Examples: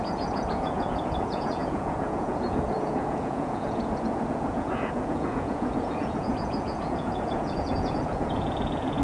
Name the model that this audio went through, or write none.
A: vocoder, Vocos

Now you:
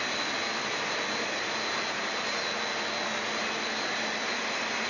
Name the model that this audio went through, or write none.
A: none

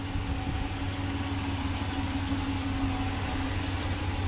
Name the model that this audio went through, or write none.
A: none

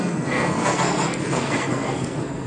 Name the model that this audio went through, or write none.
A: codec, SNAC